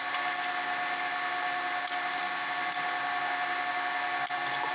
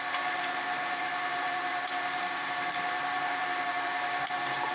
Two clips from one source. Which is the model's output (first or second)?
second